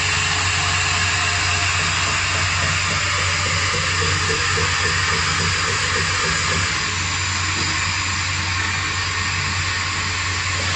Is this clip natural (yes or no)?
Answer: yes